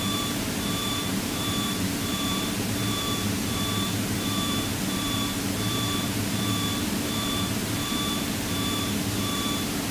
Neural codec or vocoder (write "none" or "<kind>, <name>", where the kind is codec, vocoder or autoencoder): vocoder, BigVGAN v2